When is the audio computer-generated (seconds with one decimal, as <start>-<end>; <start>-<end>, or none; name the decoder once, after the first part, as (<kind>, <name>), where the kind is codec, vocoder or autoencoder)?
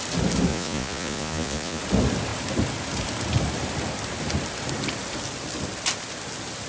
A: 0.5-1.8 (vocoder, Vocos)